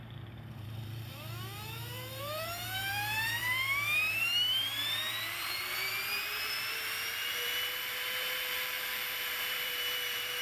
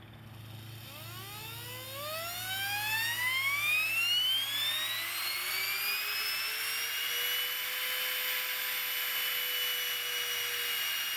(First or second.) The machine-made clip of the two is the first